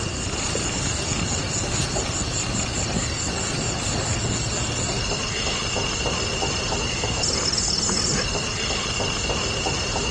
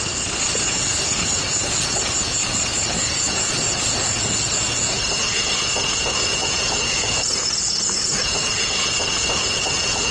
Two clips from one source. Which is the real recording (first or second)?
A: first